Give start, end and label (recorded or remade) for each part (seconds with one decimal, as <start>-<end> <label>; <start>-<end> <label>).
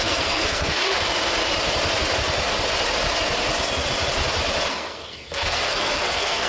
0.0-0.8 remade; 0.8-4.7 recorded; 4.7-6.5 remade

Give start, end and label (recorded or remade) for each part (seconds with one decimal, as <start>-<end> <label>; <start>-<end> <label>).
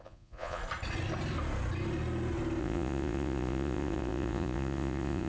0.0-0.6 remade; 0.6-2.6 recorded; 2.6-5.3 remade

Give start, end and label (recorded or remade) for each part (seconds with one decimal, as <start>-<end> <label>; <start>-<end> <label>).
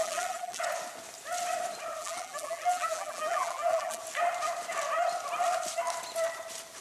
0.0-0.6 remade; 0.6-2.0 recorded; 2.0-4.0 remade; 4.0-6.8 recorded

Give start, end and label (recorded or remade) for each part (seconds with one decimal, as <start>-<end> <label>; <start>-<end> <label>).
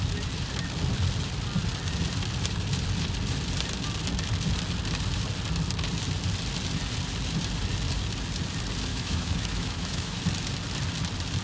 0.0-8.9 recorded; 8.9-10.2 remade; 10.2-11.4 recorded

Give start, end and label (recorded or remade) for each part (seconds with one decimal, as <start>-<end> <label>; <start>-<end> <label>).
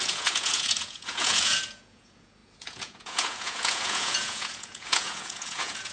0.0-5.9 remade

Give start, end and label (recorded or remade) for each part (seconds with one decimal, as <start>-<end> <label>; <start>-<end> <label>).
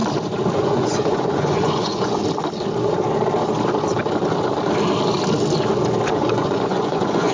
0.0-0.6 recorded; 0.6-2.2 remade; 2.2-6.1 recorded; 6.1-7.3 remade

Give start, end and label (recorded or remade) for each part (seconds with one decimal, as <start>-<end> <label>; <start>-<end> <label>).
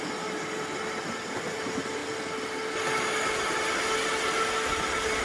0.0-5.2 recorded